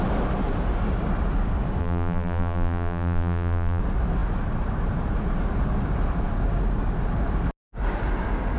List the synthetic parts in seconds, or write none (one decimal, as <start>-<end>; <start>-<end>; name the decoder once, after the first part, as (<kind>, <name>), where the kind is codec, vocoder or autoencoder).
1.8-3.8 (vocoder, BigVGAN v2)

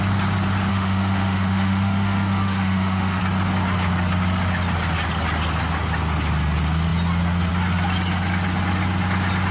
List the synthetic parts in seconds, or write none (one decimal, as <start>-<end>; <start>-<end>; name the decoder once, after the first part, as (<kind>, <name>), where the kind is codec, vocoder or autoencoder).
0.7-3.2 (autoencoder, DAC-VAE)

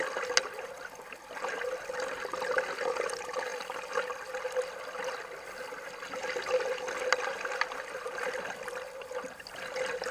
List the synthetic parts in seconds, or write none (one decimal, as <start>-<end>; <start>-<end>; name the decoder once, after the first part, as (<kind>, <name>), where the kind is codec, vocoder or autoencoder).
none